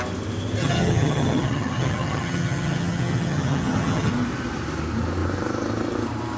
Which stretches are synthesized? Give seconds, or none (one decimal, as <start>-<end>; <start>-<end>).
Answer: 0.6-4.1